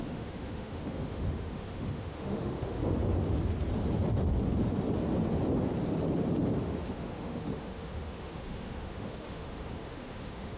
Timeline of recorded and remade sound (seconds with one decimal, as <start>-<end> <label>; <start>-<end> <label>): 0.0-2.8 remade; 2.8-6.6 recorded; 6.6-10.6 remade